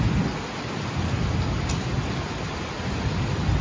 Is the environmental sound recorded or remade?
recorded